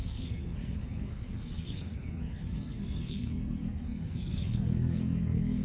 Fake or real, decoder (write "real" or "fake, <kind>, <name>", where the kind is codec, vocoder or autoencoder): fake, codec, SNAC